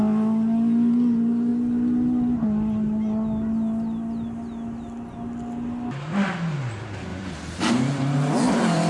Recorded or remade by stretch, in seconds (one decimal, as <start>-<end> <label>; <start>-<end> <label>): 0.0-8.9 recorded